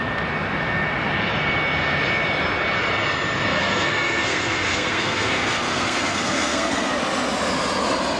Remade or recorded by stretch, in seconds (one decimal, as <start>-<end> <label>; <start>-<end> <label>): 0.0-3.5 recorded; 3.5-6.9 remade; 6.9-8.2 recorded